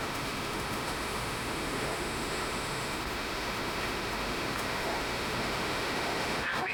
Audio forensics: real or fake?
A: fake